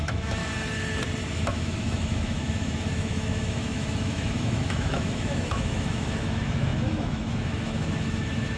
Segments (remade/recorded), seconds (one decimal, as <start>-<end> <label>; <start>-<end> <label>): 0.0-0.4 remade; 0.4-1.4 recorded; 1.4-8.6 remade